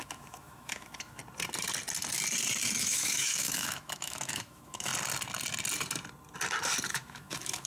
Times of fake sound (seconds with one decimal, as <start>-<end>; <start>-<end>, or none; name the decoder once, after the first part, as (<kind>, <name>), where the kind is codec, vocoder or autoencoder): 0.0-1.2 (autoencoder, DAC-VAE); 2.8-4.9; 6.9-7.7